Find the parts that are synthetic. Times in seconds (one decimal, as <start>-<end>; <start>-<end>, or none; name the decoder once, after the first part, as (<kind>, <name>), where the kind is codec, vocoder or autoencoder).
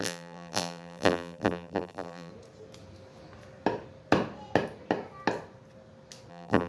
0.0-2.3 (vocoder, BigVGAN v2); 6.3-6.7